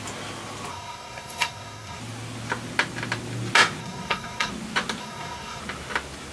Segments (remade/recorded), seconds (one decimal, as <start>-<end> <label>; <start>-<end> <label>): 0.0-0.7 recorded; 0.7-2.0 remade; 2.0-3.8 recorded; 3.8-4.5 remade; 4.5-5.0 recorded; 5.0-5.6 remade; 5.6-6.3 recorded